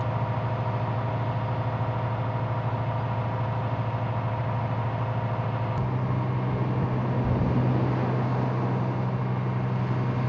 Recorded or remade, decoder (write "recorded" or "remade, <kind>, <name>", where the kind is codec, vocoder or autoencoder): recorded